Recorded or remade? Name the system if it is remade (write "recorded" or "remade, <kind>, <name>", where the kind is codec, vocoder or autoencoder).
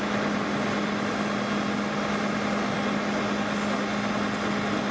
recorded